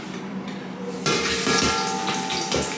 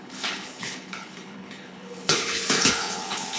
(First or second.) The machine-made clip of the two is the second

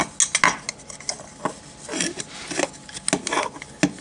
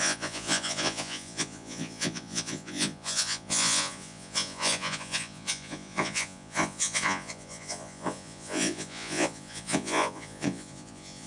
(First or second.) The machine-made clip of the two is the second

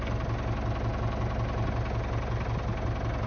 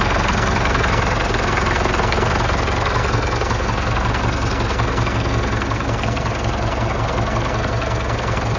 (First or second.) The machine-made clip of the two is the second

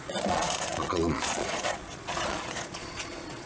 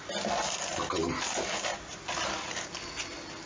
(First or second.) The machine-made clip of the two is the first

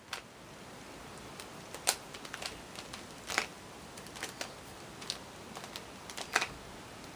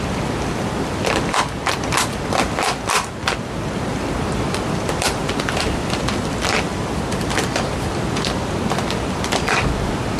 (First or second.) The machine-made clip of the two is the second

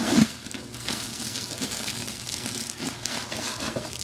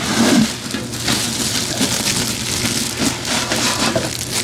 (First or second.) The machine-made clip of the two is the first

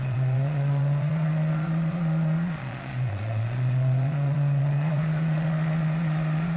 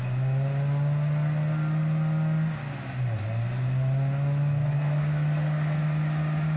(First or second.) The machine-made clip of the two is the first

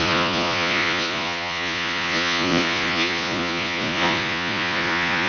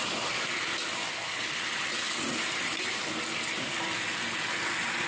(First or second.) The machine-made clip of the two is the first